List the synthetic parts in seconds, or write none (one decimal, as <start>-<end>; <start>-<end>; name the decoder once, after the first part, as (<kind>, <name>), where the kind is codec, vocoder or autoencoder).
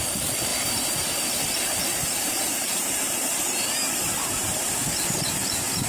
0.5-1.4 (vocoder, BigVGAN v2); 1.9-4.7